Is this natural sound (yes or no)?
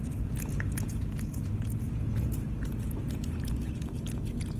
no